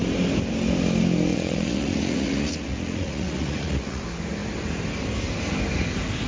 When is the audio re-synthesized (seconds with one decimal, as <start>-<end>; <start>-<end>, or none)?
1.3-4.0